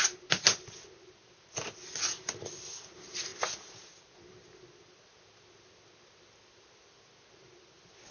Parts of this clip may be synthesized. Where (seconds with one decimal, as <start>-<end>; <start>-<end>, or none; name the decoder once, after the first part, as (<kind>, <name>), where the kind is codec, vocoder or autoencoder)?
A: none